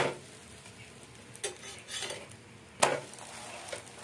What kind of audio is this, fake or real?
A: real